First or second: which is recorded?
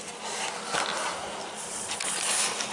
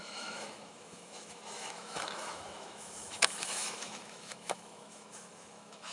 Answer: first